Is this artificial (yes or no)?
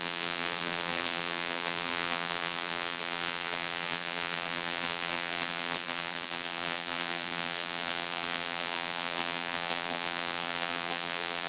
yes